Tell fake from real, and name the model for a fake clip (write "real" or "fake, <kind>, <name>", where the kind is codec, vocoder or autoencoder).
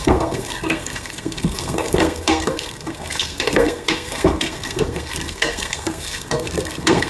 fake, codec, SNAC